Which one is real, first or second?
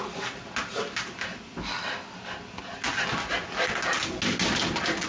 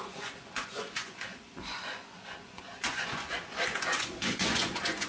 first